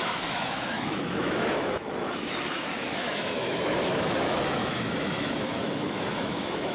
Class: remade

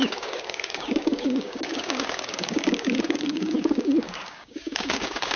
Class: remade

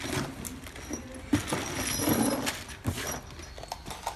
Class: recorded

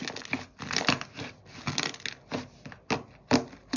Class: recorded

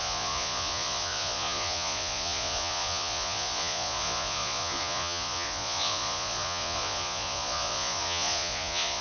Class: remade